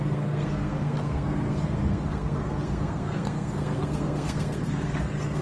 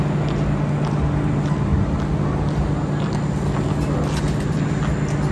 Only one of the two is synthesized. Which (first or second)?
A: first